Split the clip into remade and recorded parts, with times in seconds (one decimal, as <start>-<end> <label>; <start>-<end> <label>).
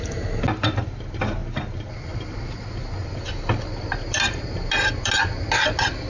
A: 0.0-6.1 recorded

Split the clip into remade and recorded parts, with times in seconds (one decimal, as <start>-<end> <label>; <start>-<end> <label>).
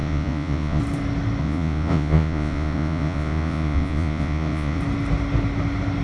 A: 0.0-0.8 remade; 0.8-1.4 recorded; 1.4-4.8 remade; 4.8-6.0 recorded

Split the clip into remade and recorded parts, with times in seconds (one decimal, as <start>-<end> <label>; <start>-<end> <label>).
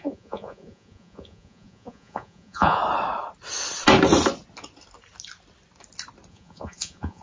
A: 0.0-2.8 remade; 2.8-6.3 recorded; 6.3-7.2 remade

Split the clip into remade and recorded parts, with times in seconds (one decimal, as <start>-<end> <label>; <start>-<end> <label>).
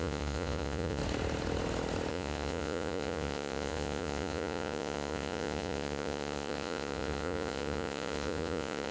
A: 0.0-1.0 remade; 1.0-2.1 recorded; 2.1-8.9 remade